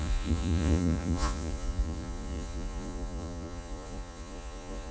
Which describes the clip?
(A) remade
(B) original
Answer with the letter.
A